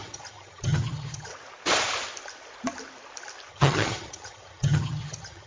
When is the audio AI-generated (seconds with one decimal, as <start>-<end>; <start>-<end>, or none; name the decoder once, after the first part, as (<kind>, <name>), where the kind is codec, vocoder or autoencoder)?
0.0-1.3 (vocoder, HiFi-GAN); 3.5-5.5